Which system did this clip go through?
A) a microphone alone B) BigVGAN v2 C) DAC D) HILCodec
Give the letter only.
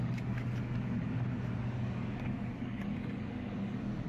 C